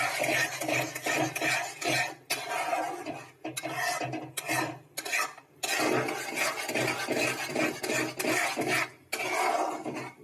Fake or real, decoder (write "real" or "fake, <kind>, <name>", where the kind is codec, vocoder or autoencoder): real